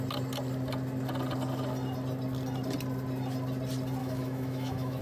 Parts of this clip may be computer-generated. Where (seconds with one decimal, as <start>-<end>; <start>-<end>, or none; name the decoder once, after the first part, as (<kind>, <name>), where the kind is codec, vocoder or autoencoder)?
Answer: 4.0-5.0 (autoencoder, DAC-VAE)